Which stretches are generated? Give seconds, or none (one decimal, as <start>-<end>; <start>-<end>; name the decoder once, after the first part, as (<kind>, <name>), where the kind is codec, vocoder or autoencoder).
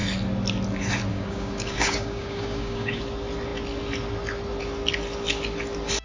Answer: 1.1-3.0 (codec, DAC)